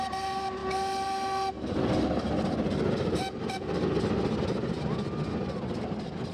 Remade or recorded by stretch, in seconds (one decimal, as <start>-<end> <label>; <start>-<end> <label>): 0.0-6.3 recorded